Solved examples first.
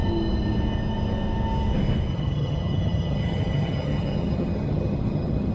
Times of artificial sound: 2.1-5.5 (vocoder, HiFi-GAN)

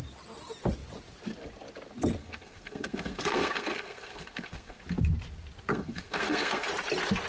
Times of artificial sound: 2.2-4.8 (codec, SNAC); 5.7-6.7